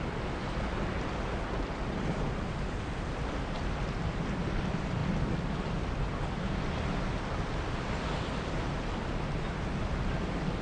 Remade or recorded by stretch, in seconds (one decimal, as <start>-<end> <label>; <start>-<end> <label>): 0.0-10.6 recorded